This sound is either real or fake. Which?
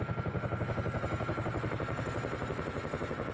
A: real